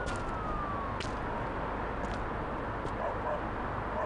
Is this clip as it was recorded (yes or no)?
yes